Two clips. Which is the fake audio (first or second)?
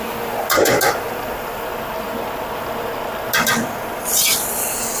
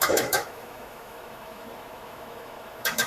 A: second